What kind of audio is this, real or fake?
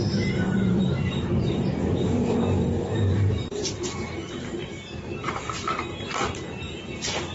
fake